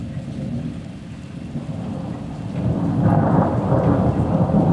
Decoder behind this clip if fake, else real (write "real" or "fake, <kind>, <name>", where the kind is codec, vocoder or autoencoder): real